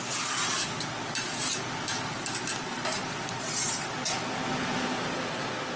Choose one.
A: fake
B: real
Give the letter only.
B